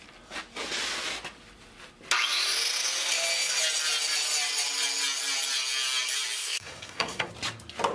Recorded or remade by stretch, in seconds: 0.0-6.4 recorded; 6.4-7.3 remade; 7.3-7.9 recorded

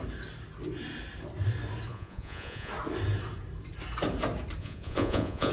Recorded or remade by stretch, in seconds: 0.0-1.9 recorded; 1.9-2.7 remade; 2.7-4.6 recorded; 4.6-5.5 remade

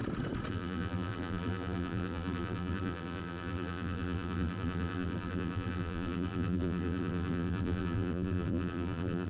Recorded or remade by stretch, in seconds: 0.0-0.5 recorded; 0.5-9.3 remade

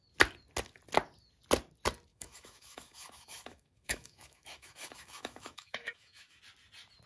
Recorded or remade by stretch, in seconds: 0.0-2.1 recorded; 2.1-6.4 remade; 6.4-7.1 recorded